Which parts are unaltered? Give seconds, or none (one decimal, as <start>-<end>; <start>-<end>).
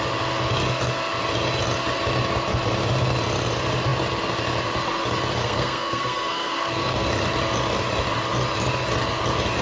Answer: 0.0-5.4; 7.1-9.6